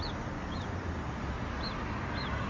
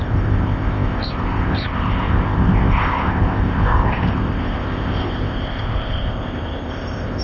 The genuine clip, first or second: first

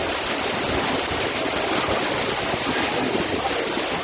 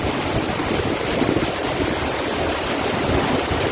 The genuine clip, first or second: first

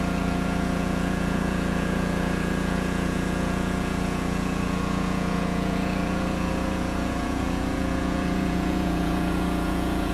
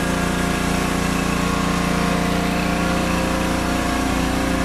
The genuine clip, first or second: second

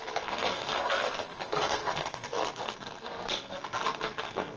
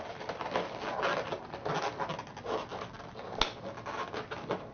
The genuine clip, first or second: second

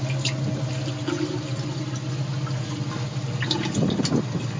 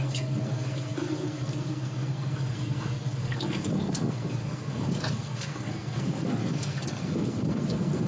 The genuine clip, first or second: first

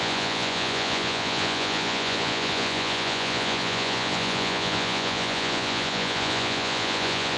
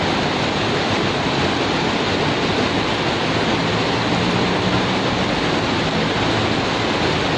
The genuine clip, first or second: second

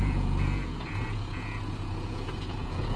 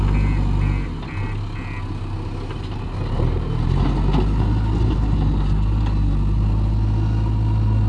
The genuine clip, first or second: second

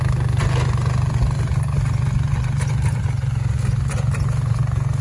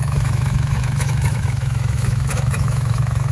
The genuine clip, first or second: first